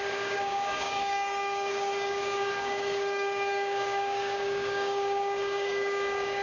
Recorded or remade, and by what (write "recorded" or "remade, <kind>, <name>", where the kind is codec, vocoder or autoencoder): remade, codec, DAC